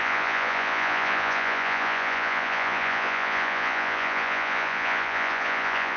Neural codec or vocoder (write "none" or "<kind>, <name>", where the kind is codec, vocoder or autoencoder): vocoder, Vocos